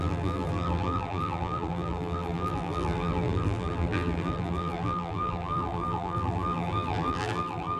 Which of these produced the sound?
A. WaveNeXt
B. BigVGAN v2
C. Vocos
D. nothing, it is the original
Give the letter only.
B